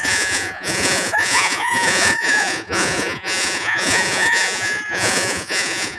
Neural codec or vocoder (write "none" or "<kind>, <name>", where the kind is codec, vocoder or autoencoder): vocoder, Vocos